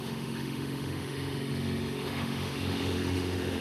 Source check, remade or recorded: remade